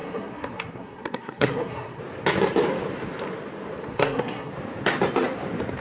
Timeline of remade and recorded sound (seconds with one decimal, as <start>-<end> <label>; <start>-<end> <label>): 0.0-2.0 remade; 2.0-3.9 recorded; 3.9-4.5 remade; 4.5-5.8 recorded